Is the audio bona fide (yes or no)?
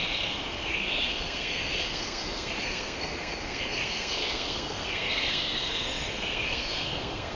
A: no